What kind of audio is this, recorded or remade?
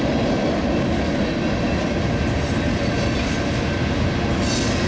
recorded